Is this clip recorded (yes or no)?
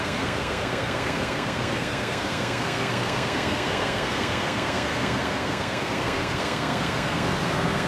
no